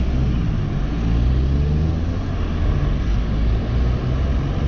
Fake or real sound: real